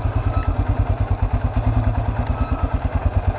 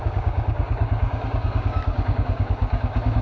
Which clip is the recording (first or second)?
first